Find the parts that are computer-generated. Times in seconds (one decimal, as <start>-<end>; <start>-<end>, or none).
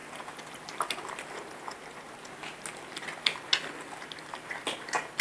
none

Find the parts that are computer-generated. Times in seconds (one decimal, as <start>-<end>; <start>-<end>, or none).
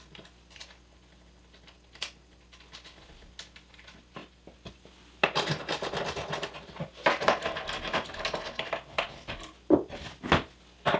none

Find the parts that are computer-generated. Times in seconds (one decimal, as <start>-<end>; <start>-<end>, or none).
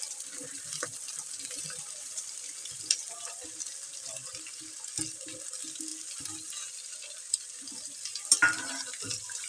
none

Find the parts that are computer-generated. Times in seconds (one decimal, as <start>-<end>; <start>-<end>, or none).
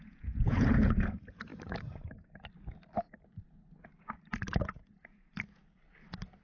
0.0-1.5; 3.5-3.9; 4.5-5.6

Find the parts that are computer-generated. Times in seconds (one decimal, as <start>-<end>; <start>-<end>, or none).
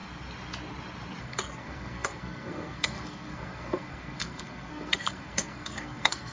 1.2-6.3